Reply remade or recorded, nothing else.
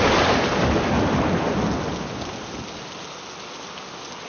recorded